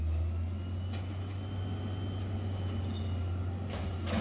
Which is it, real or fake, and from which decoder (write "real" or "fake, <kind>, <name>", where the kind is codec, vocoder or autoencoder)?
real